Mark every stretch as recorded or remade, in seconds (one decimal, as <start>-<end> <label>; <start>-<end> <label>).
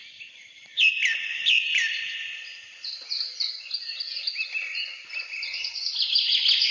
0.0-0.9 remade; 0.9-1.3 recorded; 1.3-3.5 remade; 3.5-6.7 recorded